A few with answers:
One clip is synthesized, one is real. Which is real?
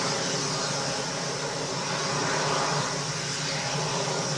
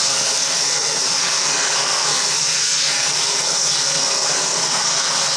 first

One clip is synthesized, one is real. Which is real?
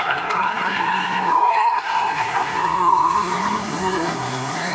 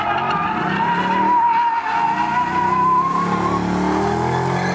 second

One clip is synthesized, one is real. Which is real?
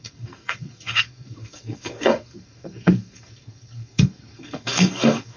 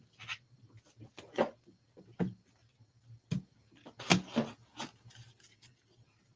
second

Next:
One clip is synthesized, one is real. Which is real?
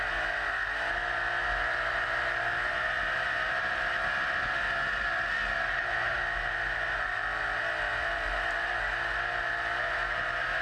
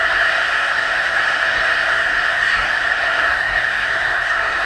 first